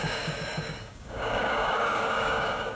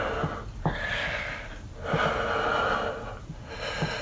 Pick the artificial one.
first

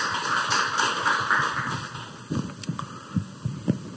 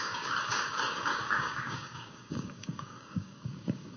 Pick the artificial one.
second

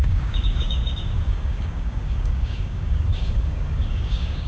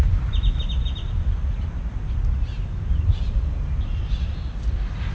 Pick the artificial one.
first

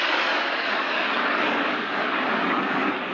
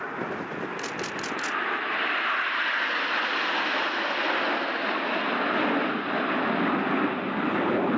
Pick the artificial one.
first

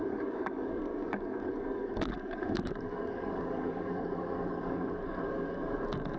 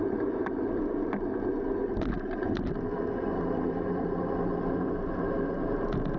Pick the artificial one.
first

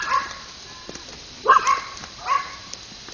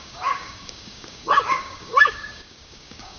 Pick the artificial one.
second